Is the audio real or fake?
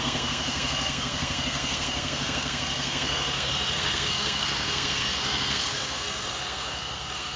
fake